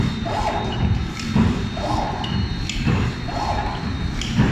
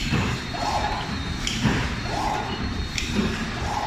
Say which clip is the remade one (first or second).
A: second